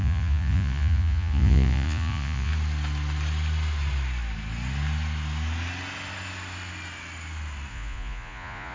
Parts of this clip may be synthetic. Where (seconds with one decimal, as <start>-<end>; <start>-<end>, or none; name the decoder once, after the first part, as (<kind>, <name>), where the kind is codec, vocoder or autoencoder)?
0.0-2.5 (vocoder, Vocos); 7.7-8.7